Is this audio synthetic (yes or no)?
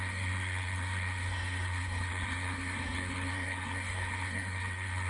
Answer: yes